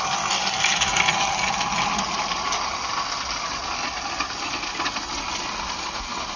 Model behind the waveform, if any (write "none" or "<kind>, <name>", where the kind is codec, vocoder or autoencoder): none